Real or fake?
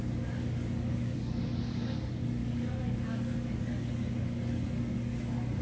fake